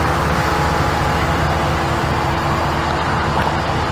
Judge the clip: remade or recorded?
recorded